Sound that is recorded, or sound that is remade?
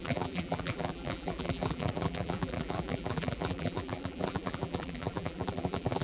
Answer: remade